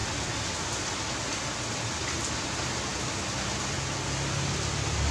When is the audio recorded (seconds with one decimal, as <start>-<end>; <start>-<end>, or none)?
0.0-5.1